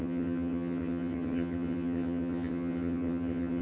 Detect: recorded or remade remade